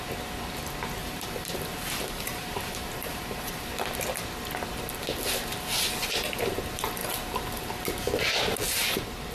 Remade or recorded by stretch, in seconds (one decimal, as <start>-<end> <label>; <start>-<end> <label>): 0.0-1.0 recorded; 1.0-3.7 remade; 3.7-7.0 recorded; 7.0-7.7 remade; 7.7-9.3 recorded